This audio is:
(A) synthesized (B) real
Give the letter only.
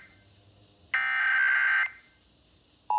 B